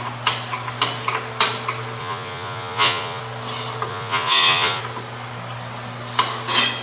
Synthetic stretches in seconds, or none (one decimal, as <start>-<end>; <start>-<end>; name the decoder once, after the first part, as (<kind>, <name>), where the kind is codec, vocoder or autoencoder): 2.0-3.2 (vocoder, Vocos); 3.9-4.8